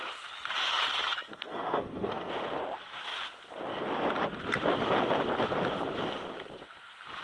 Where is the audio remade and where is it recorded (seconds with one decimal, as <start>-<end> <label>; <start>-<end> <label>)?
0.0-1.3 recorded; 1.3-2.3 remade; 2.3-7.2 recorded